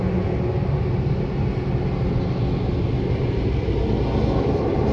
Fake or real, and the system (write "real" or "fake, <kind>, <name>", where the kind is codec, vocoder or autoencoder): real